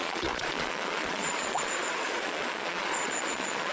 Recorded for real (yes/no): no